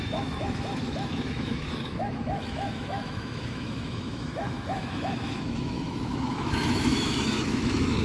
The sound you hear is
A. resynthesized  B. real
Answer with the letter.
A